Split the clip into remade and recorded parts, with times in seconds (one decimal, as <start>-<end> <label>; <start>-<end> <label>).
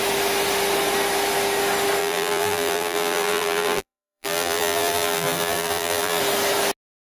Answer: 0.0-2.0 recorded; 2.0-6.2 remade; 6.2-7.0 recorded